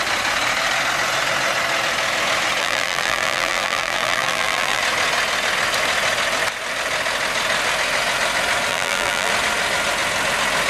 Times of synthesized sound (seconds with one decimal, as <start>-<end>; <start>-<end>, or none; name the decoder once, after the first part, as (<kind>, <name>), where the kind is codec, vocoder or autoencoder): 2.6-4.8 (vocoder, BigVGAN v2); 8.7-9.3